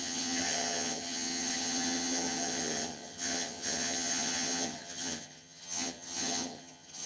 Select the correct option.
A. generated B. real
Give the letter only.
A